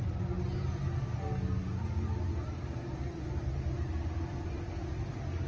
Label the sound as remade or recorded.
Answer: recorded